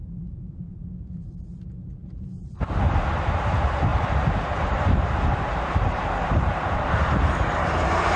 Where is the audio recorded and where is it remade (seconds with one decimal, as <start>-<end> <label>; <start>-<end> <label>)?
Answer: 0.0-8.2 remade